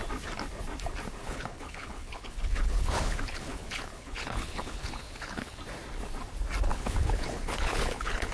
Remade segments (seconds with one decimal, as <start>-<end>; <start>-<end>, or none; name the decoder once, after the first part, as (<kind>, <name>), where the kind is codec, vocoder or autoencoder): 1.2-5.6 (codec, HILCodec); 6.7-8.3